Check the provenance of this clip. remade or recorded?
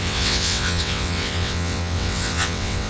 remade